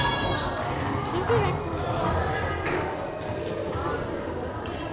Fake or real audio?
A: real